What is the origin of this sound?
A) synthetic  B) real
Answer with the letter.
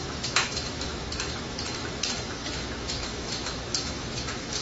A